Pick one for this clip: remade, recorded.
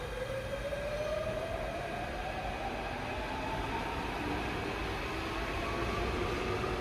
recorded